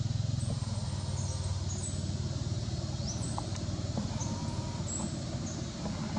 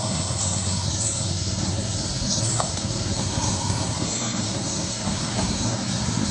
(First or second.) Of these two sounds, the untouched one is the first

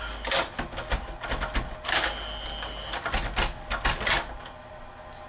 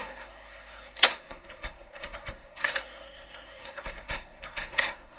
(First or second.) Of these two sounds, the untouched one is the first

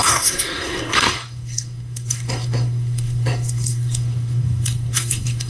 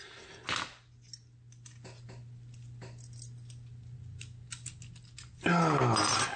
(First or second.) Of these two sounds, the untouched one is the second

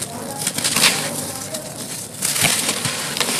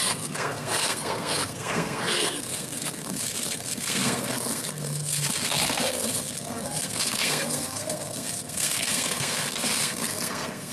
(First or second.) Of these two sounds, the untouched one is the first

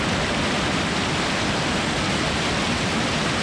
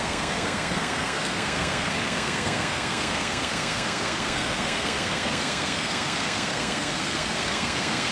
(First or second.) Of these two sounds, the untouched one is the first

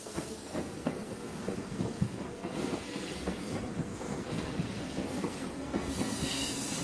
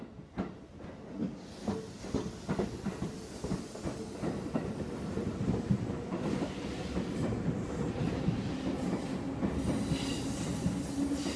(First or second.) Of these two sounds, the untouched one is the second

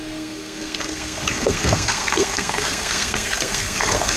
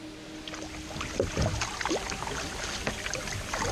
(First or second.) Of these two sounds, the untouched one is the second